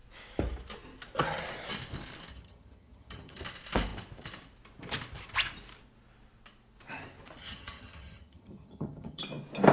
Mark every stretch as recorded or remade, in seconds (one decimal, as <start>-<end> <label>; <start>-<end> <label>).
0.0-2.3 recorded; 2.3-3.4 remade; 3.4-7.4 recorded; 7.4-9.2 remade; 9.2-9.7 recorded